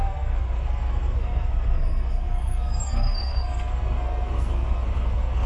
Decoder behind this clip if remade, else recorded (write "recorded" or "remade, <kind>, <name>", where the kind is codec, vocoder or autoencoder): remade, codec, SNAC